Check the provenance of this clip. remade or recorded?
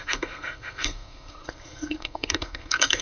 remade